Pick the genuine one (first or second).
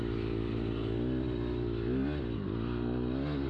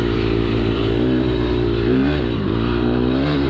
first